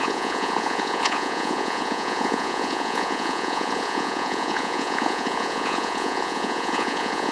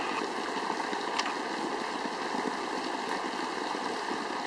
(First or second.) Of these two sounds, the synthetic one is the first